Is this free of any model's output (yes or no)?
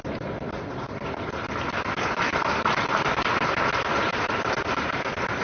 yes